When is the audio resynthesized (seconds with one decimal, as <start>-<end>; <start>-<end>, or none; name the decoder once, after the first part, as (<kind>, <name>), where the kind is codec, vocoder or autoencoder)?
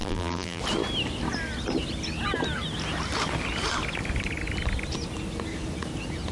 0.0-0.6 (vocoder, BigVGAN v2)